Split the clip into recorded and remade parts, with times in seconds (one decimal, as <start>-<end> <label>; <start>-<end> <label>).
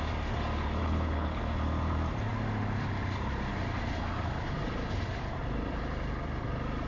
0.0-0.8 recorded; 0.8-1.4 remade; 1.4-6.9 recorded